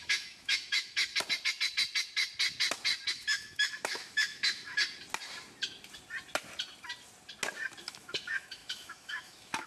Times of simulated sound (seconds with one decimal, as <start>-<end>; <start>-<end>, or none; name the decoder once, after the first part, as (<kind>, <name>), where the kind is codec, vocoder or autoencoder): 0.0-1.1 (autoencoder, DAC-VAE); 3.1-4.8; 7.8-9.7